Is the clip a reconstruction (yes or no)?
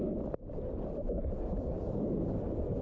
no